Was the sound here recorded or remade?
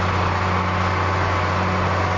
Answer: recorded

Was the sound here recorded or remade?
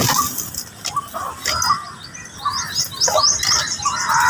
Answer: recorded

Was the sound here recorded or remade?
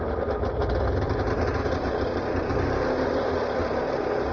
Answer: recorded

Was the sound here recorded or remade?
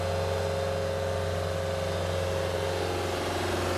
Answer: recorded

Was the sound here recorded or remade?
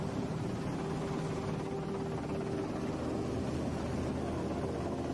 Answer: recorded